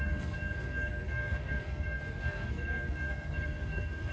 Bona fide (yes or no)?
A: no